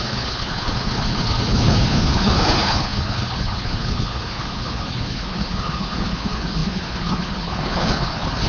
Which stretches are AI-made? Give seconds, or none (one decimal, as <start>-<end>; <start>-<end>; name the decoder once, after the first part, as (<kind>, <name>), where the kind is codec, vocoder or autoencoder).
0.0-8.5 (codec, HILCodec)

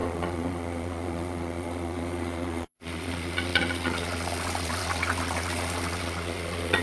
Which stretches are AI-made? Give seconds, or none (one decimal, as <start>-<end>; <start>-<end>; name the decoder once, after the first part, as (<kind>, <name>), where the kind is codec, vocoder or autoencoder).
0.0-6.8 (vocoder, Vocos)

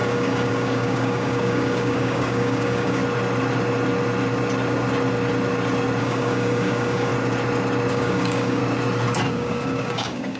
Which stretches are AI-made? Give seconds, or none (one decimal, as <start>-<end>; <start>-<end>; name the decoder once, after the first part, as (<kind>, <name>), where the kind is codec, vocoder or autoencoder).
0.0-3.0 (codec, DAC); 6.0-7.1; 7.9-8.6; 9.3-10.4